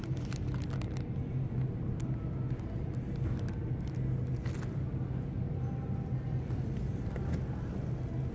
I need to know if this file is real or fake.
real